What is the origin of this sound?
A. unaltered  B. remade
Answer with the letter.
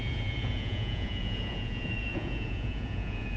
B